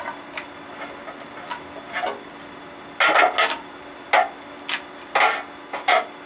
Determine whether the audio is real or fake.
real